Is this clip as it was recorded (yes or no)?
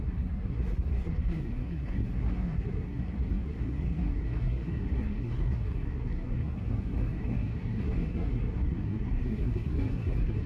no